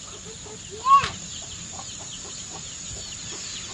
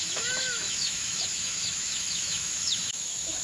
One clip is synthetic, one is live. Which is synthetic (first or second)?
second